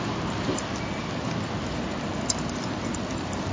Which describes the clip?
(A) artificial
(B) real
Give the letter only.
B